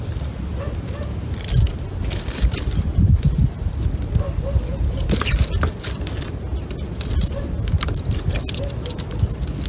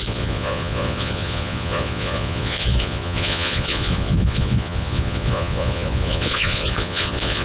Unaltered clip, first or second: first